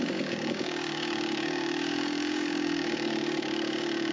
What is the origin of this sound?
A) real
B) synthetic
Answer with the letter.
B